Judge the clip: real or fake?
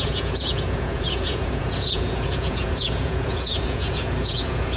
fake